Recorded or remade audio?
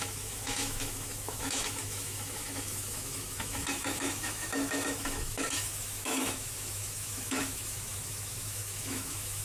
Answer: remade